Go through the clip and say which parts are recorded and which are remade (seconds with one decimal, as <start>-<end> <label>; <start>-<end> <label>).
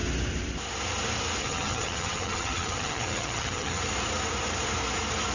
0.0-1.4 recorded; 1.4-3.8 remade; 3.8-5.3 recorded